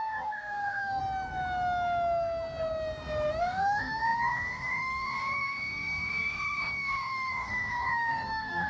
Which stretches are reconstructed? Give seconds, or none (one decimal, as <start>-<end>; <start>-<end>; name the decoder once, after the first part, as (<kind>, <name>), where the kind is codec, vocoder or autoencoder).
0.0-1.0 (codec, DAC); 3.4-8.7